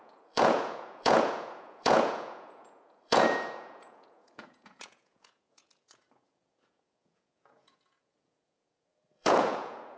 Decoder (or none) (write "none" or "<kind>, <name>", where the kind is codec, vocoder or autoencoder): vocoder, Vocos